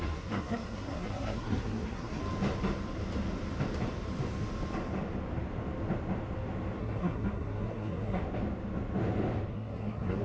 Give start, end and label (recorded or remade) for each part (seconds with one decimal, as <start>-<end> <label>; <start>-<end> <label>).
0.0-2.2 remade; 2.2-6.8 recorded; 6.8-8.2 remade; 8.2-9.5 recorded; 9.5-10.2 remade

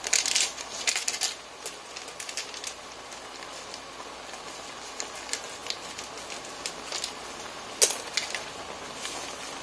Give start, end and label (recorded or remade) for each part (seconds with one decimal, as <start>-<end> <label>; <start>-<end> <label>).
0.0-9.6 recorded

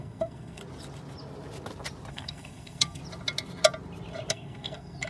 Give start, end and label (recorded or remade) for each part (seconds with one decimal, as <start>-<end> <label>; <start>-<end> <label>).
0.0-0.6 remade; 0.6-2.1 recorded; 2.1-3.0 remade; 3.0-4.3 recorded; 4.3-5.1 remade

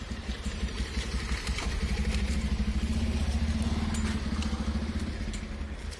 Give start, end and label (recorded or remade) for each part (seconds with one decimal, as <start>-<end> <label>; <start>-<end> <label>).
0.0-3.6 remade; 3.6-6.0 recorded